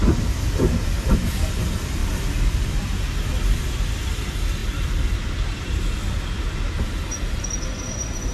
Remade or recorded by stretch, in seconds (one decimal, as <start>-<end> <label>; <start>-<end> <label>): 0.0-8.3 recorded